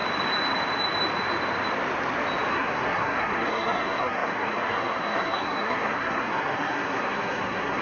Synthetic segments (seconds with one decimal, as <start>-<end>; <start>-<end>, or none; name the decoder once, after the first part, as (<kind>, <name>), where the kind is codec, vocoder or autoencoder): 2.5-7.8 (codec, SNAC)